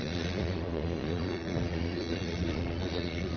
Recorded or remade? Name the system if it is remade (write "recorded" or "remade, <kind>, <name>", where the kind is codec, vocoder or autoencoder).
remade, vocoder, Vocos